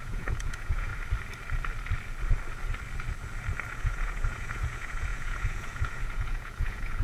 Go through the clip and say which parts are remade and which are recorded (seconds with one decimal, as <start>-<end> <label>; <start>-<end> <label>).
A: 0.0-0.9 remade; 0.9-3.8 recorded; 3.8-7.0 remade